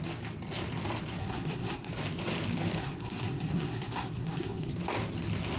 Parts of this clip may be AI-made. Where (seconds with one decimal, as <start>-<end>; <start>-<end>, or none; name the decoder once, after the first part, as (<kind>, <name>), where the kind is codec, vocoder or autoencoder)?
1.2-1.9 (codec, SNAC); 2.8-4.7